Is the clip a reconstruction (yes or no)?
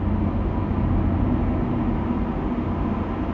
no